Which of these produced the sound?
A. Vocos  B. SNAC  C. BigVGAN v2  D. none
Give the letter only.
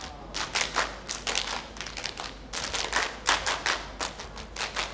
D